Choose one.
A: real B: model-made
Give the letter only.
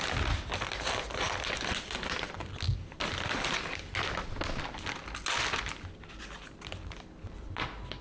A